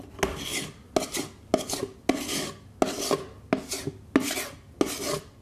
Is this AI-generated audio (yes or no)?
no